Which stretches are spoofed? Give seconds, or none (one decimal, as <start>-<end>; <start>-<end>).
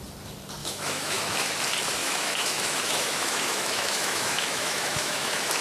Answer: 0.6-1.5; 2.0-5.6